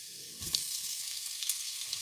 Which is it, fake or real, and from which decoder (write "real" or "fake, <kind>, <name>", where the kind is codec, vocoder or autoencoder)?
fake, codec, SNAC